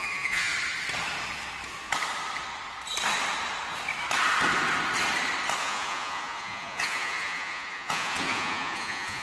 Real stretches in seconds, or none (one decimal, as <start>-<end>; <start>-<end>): 0.5-5.6